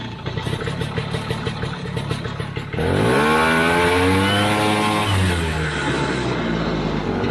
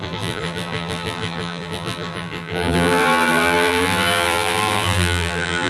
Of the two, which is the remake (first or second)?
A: second